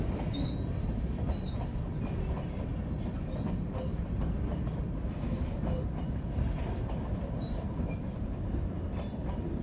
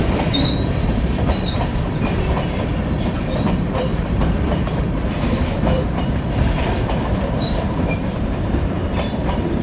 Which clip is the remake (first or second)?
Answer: second